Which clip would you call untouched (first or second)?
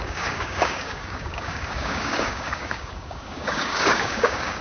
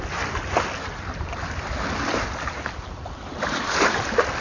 second